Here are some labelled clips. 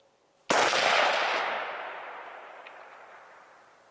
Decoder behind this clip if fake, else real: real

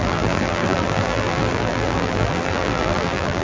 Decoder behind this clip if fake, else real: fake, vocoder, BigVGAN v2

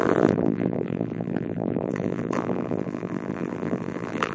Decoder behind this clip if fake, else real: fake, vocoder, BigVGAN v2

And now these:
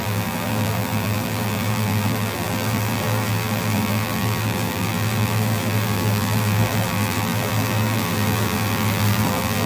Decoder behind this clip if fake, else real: fake, vocoder, BigVGAN v2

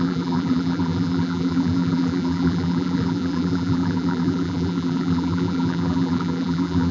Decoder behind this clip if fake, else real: fake, vocoder, BigVGAN v2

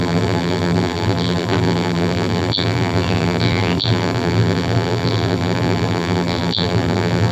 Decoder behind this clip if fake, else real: fake, vocoder, BigVGAN v2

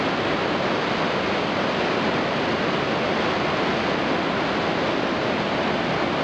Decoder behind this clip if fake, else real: real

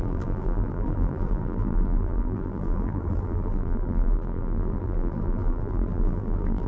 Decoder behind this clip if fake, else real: fake, vocoder, BigVGAN v2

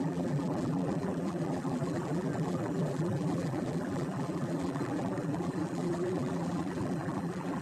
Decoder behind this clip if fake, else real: fake, vocoder, BigVGAN v2